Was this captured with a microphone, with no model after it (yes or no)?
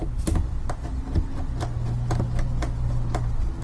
yes